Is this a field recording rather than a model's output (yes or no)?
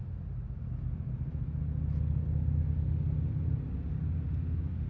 yes